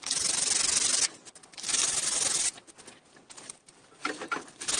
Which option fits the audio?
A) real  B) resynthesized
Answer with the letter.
A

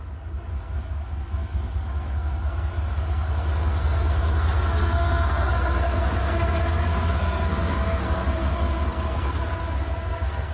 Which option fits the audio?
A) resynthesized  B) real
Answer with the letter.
A